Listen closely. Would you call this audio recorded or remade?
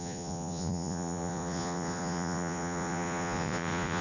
remade